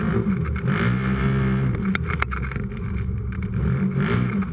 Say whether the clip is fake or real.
real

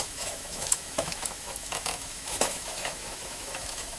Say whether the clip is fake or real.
fake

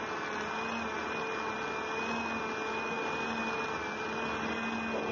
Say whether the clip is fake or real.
real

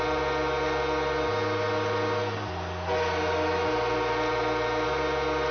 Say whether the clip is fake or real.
real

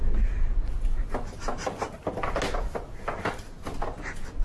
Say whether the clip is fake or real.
real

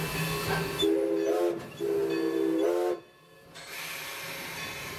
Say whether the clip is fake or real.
real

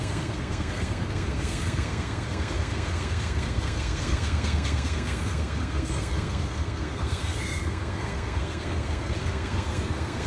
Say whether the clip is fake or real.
fake